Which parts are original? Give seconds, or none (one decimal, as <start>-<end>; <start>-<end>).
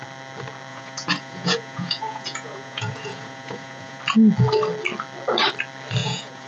0.0-0.7; 4.0-6.0